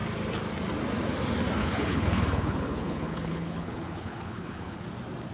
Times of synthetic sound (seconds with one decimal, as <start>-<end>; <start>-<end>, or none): 1.6-4.8